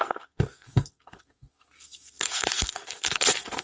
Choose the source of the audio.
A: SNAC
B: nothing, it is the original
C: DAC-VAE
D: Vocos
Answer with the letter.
A